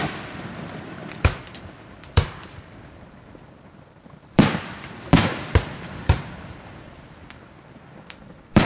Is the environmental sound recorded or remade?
remade